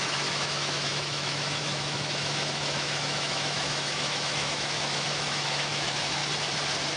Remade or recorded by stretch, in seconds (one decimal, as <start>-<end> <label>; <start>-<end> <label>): 0.0-6.2 remade; 6.2-7.0 recorded